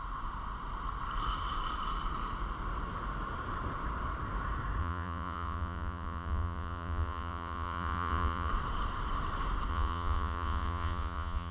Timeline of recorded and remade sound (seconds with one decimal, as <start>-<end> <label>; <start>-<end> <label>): 0.0-4.8 recorded; 4.8-8.5 remade; 8.5-9.7 recorded; 9.7-11.5 remade